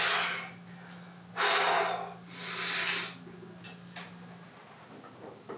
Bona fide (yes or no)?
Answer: yes